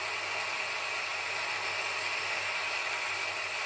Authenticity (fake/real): real